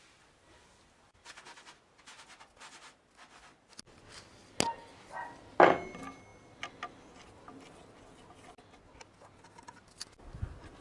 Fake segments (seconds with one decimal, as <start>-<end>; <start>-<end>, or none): none